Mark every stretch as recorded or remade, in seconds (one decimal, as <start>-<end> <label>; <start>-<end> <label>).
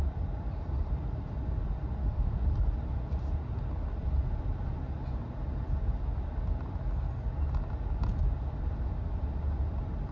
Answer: 0.0-2.0 recorded; 2.0-2.5 remade; 2.5-10.1 recorded